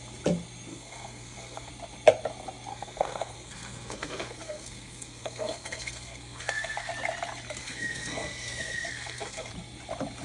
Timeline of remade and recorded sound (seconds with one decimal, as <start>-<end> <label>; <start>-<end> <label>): 0.0-0.7 recorded; 0.7-1.7 remade; 1.7-2.7 recorded; 2.7-6.9 remade; 6.9-7.6 recorded; 7.6-9.5 remade; 9.5-10.2 recorded